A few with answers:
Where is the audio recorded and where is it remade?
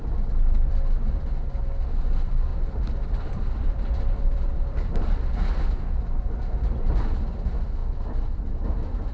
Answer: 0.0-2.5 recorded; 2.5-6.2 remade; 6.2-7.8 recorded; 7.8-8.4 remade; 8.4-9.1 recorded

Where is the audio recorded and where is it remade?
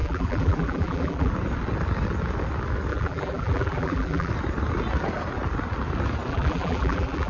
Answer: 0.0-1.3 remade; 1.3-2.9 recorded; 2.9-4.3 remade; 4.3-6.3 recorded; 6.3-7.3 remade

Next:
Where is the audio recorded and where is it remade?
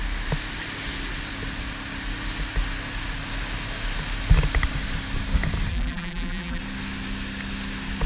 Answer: 0.0-5.7 recorded; 5.7-6.6 remade; 6.6-8.1 recorded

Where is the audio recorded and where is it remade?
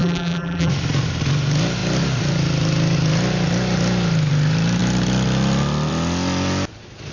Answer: 0.0-0.7 remade; 0.7-7.1 recorded